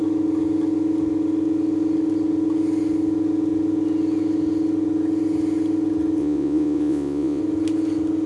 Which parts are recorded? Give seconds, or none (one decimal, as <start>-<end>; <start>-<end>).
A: 0.0-6.2; 7.4-8.3